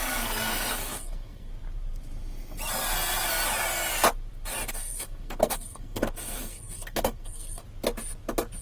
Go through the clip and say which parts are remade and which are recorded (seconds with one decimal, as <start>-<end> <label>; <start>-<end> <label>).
0.0-1.5 remade; 1.5-4.7 recorded; 4.7-7.6 remade; 7.6-8.6 recorded